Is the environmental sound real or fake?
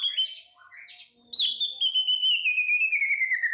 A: real